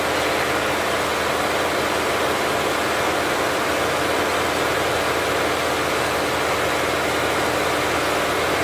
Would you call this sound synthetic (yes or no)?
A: no